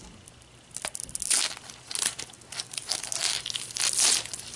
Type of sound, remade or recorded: recorded